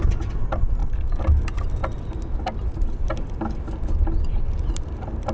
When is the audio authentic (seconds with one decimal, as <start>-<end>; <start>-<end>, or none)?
0.0-5.3